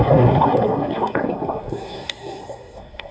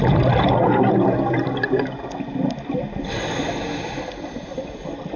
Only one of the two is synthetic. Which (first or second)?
first